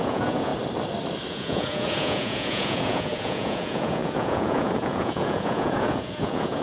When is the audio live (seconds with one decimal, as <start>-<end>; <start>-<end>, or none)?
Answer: 0.5-1.3